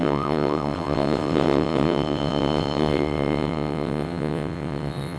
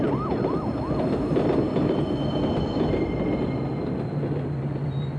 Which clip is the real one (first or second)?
second